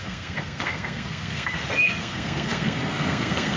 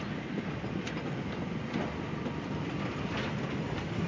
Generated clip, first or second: first